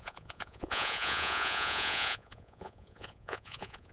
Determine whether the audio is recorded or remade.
remade